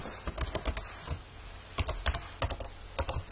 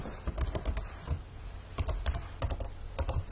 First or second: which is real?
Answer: first